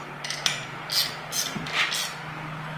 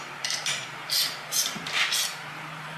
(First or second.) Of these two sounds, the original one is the first